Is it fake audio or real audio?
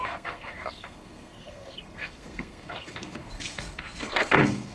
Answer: fake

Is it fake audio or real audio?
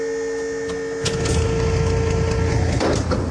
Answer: real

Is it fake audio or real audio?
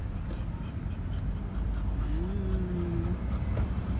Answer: real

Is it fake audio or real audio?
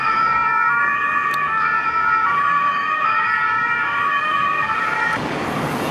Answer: fake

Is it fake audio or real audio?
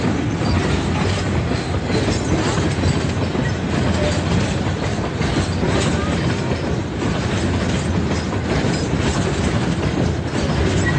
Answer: real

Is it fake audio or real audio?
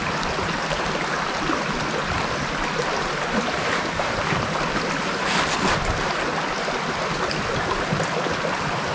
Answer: real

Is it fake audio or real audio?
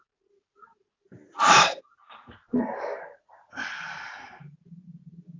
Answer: real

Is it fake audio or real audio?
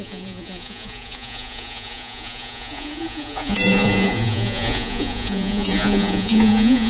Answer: fake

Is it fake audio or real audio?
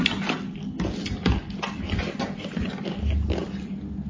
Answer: real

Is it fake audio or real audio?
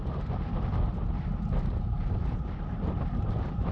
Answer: real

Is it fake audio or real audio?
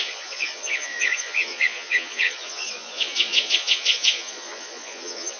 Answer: fake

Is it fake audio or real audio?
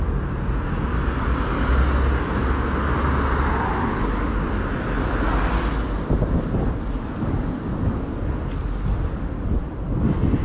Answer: real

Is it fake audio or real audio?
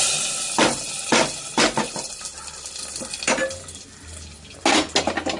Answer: real